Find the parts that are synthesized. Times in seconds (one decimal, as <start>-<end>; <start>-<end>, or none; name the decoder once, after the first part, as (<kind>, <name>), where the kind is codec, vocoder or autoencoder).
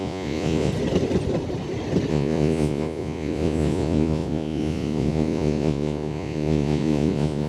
0.0-0.7 (vocoder, Vocos); 2.1-7.5